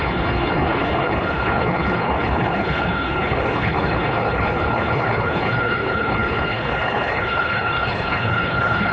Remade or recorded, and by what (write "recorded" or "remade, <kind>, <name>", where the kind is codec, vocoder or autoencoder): remade, codec, HILCodec